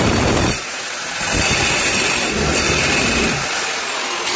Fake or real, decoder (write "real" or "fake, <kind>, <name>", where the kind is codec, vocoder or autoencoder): real